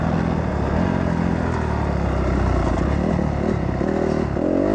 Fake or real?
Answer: real